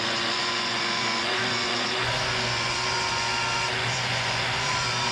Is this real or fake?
fake